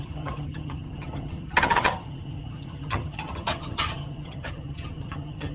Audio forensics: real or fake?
fake